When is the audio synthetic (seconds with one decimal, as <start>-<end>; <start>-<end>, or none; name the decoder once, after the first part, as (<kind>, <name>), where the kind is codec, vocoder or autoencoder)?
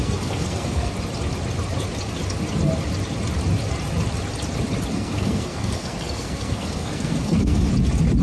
0.0-0.9 (codec, SNAC); 4.9-7.7